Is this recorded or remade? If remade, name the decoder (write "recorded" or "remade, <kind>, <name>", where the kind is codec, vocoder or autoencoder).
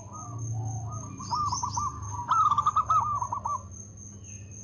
recorded